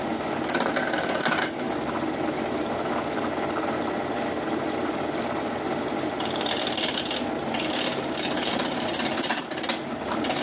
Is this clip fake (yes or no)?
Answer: no